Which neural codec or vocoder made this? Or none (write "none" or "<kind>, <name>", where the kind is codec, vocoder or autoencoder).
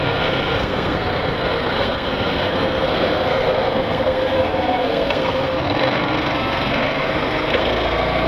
codec, SNAC